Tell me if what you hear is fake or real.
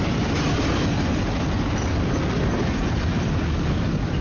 real